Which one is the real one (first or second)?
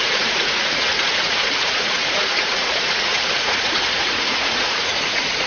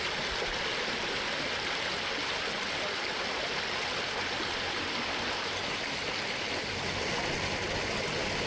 second